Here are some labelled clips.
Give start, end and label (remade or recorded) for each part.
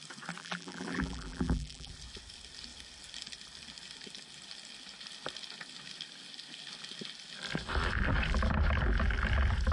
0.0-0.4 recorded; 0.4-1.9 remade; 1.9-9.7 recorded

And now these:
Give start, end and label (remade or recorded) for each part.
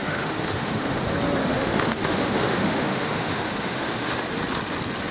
0.0-1.0 remade; 1.0-1.4 recorded; 1.4-4.2 remade; 4.2-5.1 recorded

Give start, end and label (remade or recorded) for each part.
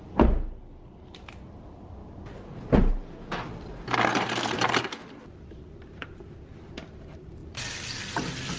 0.0-8.6 recorded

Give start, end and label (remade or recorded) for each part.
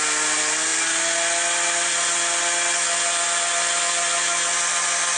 0.0-5.2 recorded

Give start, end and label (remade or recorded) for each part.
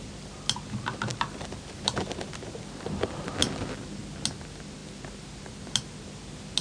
0.0-1.1 recorded; 1.1-2.3 remade; 2.3-6.6 recorded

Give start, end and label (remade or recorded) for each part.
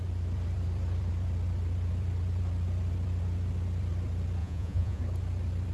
0.0-4.4 recorded; 4.4-5.0 remade; 5.0-5.7 recorded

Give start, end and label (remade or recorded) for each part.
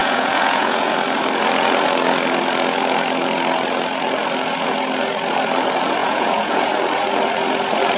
0.0-0.9 remade; 0.9-6.0 recorded; 6.0-6.7 remade; 6.7-8.0 recorded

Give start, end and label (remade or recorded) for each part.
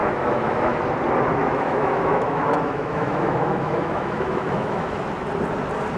0.0-0.7 remade; 0.7-1.4 recorded; 1.4-5.0 remade; 5.0-6.0 recorded